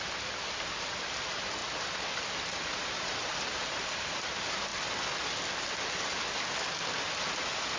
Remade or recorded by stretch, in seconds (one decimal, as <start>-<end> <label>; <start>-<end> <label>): 0.0-4.7 remade; 4.7-7.8 recorded